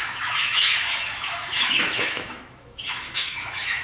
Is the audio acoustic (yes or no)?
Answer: no